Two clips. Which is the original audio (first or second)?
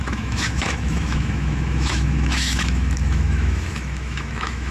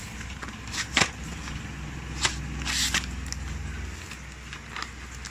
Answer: second